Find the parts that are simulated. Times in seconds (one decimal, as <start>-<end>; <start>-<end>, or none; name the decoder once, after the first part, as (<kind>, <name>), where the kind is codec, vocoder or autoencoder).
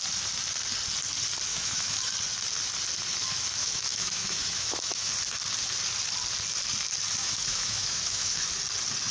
1.5-2.1 (autoencoder, DAC-VAE); 3.6-5.1; 7.2-8.5